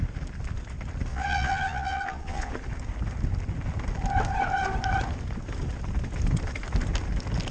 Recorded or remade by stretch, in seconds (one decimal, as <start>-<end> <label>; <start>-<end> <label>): 0.0-1.1 recorded; 1.1-2.5 remade; 2.5-7.5 recorded